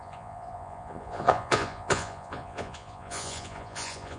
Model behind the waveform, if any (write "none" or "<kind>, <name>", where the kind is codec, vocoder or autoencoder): vocoder, Vocos